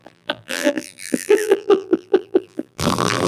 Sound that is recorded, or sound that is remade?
remade